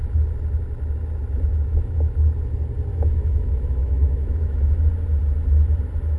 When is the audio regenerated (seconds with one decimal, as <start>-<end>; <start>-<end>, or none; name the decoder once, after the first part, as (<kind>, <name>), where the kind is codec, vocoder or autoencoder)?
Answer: 1.5-2.1 (autoencoder, DAC-VAE); 2.9-4.9

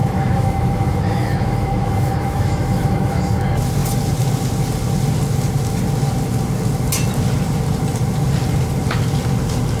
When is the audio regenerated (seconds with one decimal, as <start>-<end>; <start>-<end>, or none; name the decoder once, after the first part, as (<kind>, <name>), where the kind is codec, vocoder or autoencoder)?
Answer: 0.0-3.2 (autoencoder, DAC-VAE)

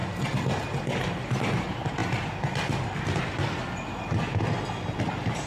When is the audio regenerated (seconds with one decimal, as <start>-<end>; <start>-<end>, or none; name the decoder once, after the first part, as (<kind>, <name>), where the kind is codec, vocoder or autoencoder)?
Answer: none

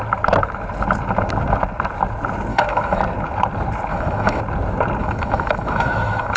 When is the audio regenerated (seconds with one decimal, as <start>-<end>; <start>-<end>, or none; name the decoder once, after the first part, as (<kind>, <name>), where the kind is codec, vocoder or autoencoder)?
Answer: 2.5-3.0 (autoencoder, DAC-VAE); 3.9-4.4; 5.0-6.4